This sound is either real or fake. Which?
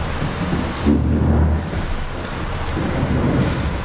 real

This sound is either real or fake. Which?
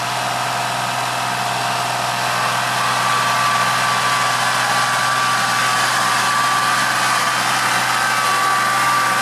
real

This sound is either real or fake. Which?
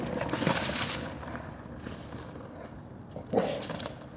real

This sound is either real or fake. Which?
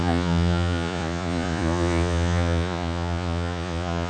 fake